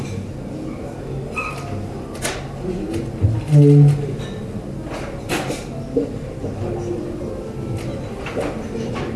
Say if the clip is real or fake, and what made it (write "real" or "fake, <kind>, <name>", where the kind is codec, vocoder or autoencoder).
real